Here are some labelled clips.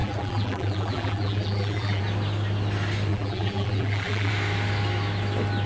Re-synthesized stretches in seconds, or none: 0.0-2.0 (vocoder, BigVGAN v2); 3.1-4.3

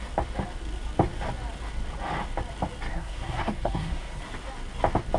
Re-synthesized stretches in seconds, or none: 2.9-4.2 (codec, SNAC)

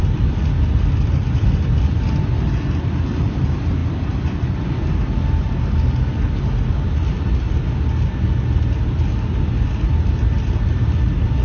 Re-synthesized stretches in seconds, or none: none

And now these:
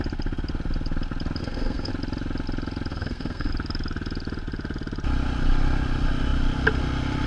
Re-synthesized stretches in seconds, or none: 1.4-1.9 (codec, SNAC); 2.9-3.5

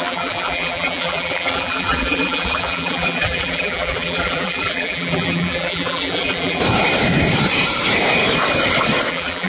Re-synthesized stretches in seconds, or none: 0.0-6.6 (vocoder, BigVGAN v2); 9.1-9.5

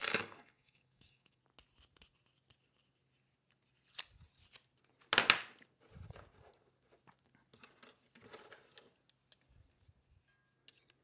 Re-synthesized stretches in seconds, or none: 0.0-1.4 (codec, DAC)

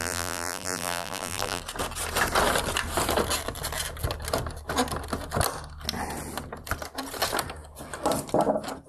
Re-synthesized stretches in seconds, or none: 0.0-1.6 (vocoder, BigVGAN v2)

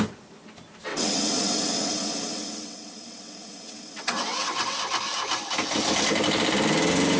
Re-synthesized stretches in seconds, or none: 0.9-4.8 (vocoder, WaveNeXt)